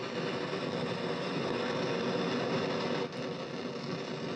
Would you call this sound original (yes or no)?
yes